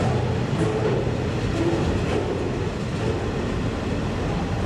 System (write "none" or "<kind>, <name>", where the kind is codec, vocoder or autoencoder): none